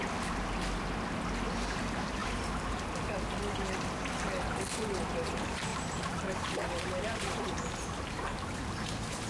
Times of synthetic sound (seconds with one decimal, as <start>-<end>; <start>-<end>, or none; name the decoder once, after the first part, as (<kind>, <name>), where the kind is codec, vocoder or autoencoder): 2.2-2.8 (vocoder, BigVGAN v2); 5.7-9.3